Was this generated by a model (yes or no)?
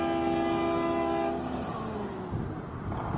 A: no